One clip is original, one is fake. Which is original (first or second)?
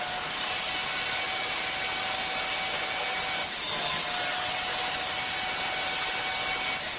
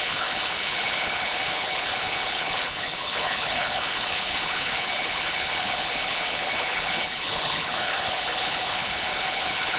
first